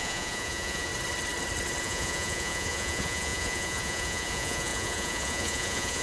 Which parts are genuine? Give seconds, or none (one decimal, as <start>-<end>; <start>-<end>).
0.9-1.8